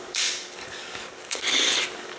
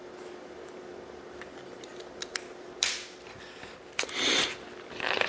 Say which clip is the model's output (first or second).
first